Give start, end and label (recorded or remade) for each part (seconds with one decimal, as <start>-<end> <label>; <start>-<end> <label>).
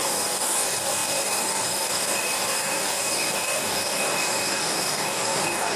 0.0-5.8 remade